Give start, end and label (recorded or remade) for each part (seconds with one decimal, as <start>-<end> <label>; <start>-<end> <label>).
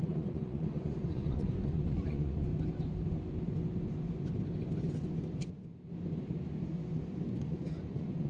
0.0-2.5 remade; 2.5-7.3 recorded; 7.3-8.3 remade